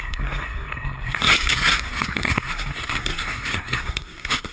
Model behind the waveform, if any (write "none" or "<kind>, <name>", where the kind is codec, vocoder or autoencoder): codec, SNAC